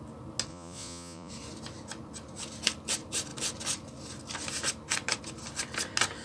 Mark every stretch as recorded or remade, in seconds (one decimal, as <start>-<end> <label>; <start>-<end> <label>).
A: 0.0-0.5 recorded; 0.5-1.3 remade; 1.3-6.2 recorded